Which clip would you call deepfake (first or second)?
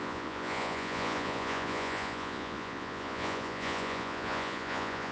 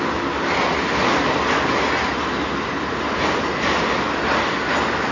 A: first